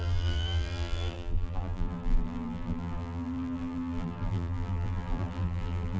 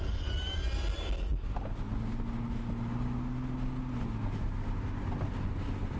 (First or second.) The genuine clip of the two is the second